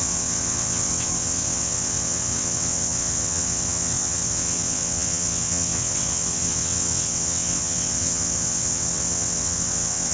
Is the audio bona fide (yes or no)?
no